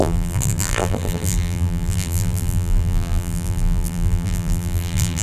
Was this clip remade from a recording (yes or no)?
yes